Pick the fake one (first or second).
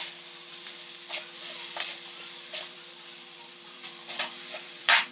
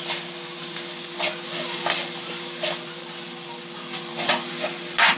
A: first